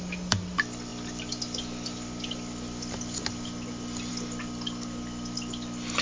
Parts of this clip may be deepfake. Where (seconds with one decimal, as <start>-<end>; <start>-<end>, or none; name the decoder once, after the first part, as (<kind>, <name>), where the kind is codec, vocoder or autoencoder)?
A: none